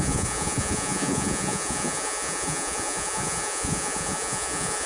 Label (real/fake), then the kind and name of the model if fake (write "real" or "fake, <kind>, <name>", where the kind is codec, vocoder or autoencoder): fake, vocoder, Vocos